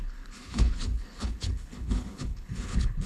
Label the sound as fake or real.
fake